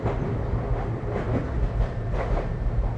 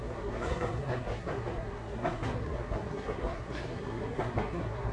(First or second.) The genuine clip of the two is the first